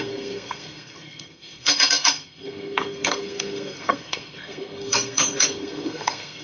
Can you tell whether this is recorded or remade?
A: remade